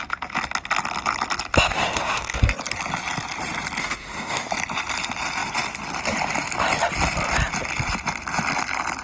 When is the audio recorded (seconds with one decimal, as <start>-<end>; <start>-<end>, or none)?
0.0-1.5; 2.4-3.8; 4.5-9.0